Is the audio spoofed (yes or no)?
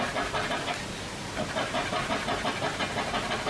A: no